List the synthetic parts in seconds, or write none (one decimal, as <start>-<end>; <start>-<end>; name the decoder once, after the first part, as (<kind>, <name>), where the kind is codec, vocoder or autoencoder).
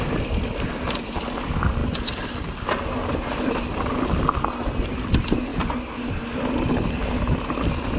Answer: none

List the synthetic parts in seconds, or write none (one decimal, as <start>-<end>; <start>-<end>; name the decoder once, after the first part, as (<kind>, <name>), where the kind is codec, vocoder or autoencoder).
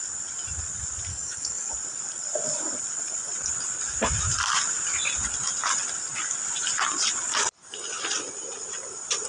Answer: 1.1-1.7 (codec, DAC)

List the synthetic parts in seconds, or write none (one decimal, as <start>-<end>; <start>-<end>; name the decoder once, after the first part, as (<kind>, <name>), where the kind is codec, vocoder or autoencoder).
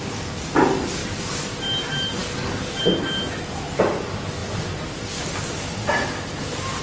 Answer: 1.0-1.6 (codec, DAC); 2.2-2.8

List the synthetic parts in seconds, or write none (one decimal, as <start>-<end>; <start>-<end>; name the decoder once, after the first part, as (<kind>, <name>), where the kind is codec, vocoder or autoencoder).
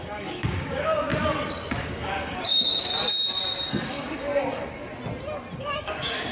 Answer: 0.0-1.1 (codec, DAC); 1.8-2.9; 3.8-4.3; 5.6-6.3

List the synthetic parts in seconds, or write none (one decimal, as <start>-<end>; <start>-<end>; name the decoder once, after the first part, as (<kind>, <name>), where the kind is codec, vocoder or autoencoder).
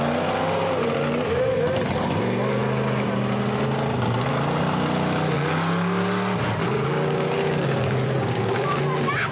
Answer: 6.6-8.8 (codec, DAC)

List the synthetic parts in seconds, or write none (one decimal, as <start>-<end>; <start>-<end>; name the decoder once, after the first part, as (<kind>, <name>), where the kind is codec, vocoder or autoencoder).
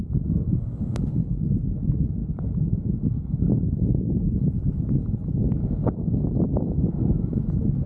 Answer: 0.0-1.0 (codec, DAC); 2.2-3.9; 5.6-7.4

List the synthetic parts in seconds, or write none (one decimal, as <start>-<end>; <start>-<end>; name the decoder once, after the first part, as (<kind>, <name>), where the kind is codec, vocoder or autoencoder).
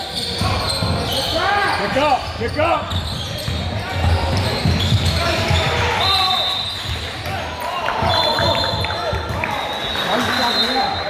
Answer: none